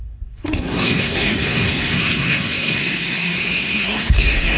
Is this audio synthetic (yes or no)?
yes